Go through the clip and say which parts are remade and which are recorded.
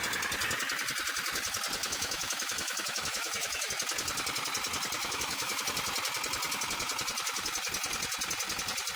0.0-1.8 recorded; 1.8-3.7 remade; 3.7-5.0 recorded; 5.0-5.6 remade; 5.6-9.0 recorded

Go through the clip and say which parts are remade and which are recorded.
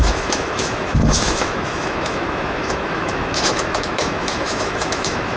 0.0-5.4 remade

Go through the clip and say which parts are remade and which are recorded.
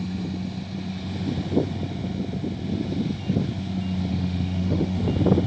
0.0-4.1 recorded; 4.1-5.0 remade; 5.0-5.5 recorded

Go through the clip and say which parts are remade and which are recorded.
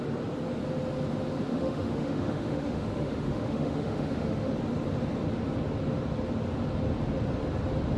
0.0-1.5 recorded; 1.5-4.5 remade; 4.5-8.0 recorded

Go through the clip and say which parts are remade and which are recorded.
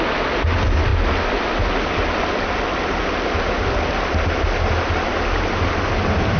0.0-6.4 recorded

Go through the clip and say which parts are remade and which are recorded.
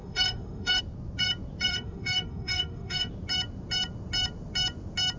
0.0-0.8 remade; 0.8-1.7 recorded; 1.7-3.1 remade; 3.1-5.2 recorded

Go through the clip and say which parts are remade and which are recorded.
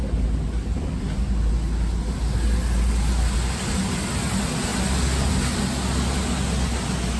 0.0-7.2 recorded